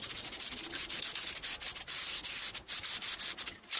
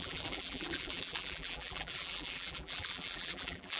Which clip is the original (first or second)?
first